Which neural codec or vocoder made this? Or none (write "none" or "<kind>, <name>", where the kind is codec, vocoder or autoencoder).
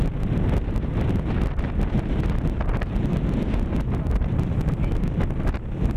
none